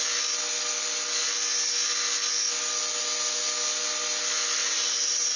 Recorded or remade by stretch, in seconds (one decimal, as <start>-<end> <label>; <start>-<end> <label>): 0.0-4.6 recorded; 4.6-5.4 remade